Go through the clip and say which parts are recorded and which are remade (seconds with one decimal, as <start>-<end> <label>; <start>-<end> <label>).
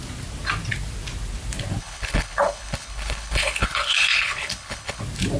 0.0-1.8 recorded; 1.8-5.0 remade; 5.0-5.4 recorded